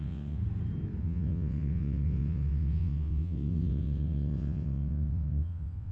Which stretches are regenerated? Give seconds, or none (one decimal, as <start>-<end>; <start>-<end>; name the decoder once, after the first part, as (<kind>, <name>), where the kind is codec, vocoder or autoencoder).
0.0-0.4 (vocoder, WaveNeXt); 1.0-5.9